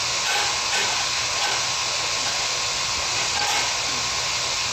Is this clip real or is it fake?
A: real